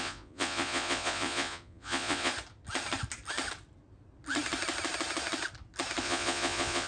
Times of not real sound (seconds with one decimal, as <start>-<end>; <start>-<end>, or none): 0.0-2.3; 6.0-6.9